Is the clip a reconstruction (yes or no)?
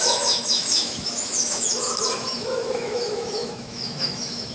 yes